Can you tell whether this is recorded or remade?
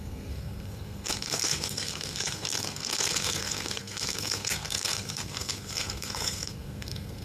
remade